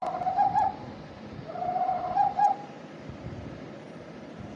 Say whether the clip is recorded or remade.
remade